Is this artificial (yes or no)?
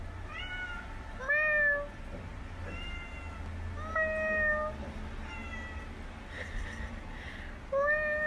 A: no